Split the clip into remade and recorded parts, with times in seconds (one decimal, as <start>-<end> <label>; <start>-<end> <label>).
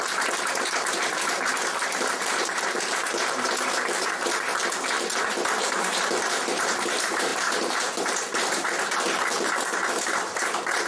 0.0-4.5 remade; 4.5-5.6 recorded; 5.6-10.9 remade